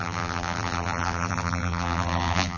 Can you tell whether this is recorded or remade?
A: remade